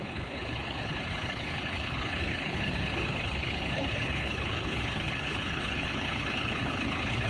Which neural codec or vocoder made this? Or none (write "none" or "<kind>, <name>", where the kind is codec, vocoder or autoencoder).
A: codec, HILCodec